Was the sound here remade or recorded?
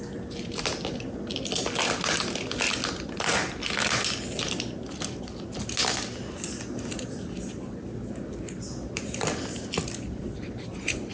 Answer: recorded